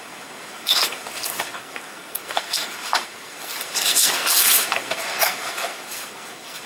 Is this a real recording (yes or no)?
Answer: no